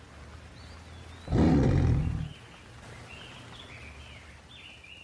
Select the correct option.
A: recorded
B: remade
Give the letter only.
A